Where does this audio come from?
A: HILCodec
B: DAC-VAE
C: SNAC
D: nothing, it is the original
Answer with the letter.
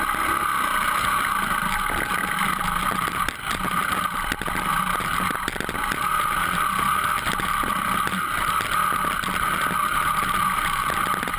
D